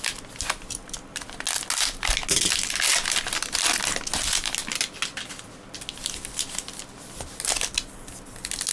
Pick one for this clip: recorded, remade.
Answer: recorded